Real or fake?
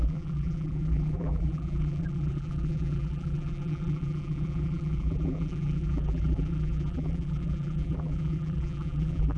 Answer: fake